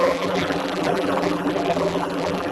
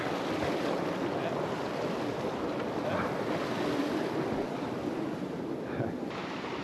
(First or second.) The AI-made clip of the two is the first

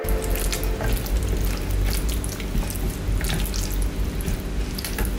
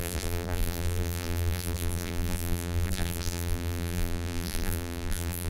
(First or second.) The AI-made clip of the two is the second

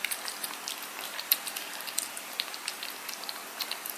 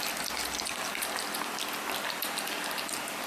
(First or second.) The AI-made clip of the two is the first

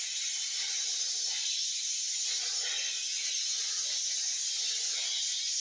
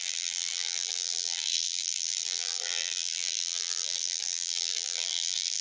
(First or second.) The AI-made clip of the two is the second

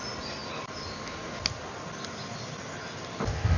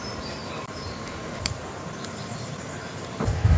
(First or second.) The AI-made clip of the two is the second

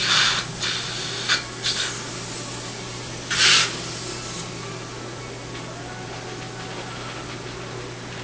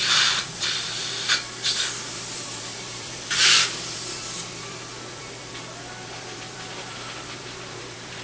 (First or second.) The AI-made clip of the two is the second